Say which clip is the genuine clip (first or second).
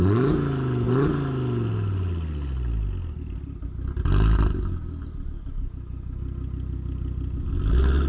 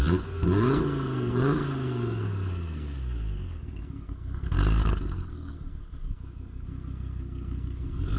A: first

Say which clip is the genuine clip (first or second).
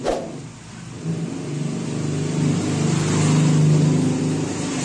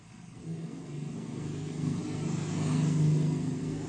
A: first